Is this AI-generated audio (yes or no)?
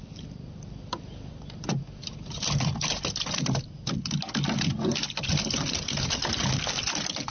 no